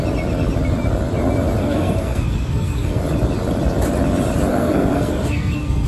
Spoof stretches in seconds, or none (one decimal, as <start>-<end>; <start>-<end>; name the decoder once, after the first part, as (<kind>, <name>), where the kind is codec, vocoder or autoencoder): 1.6-3.0 (codec, SNAC); 4.5-5.9

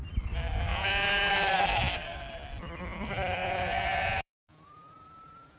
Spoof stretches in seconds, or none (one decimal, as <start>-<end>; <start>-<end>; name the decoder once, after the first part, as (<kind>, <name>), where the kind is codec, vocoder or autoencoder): 0.7-1.3 (vocoder, Vocos); 3.4-5.6